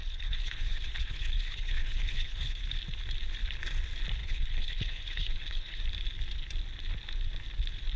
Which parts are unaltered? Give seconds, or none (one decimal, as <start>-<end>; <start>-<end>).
2.6-4.2; 5.8-8.0